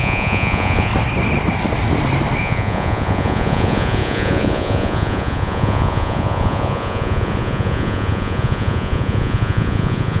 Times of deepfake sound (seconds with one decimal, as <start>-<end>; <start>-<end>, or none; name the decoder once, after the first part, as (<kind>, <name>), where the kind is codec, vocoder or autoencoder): 0.0-0.9 (vocoder, Vocos); 2.4-10.2